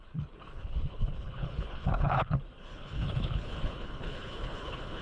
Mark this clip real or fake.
fake